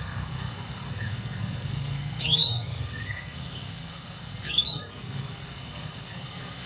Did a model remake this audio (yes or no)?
yes